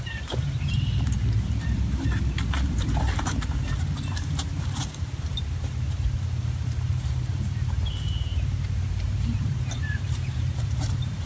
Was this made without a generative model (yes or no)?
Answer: no